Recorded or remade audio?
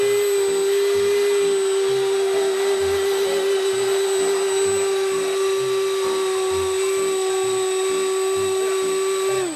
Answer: recorded